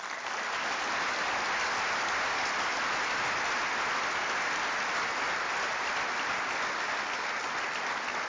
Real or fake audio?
real